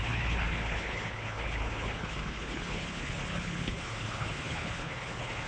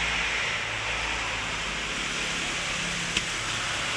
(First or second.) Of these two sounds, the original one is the second